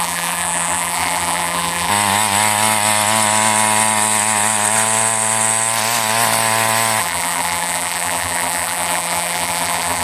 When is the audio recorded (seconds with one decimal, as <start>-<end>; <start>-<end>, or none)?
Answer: 1.9-7.0